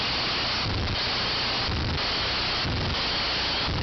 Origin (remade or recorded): recorded